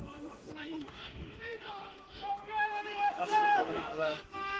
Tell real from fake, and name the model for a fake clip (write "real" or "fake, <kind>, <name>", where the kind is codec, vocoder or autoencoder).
fake, autoencoder, DAC-VAE